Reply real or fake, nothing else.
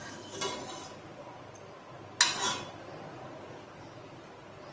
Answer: real